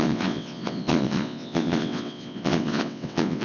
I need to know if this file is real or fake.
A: fake